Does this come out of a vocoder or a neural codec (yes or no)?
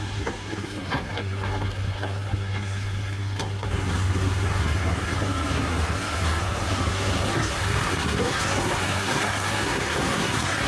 yes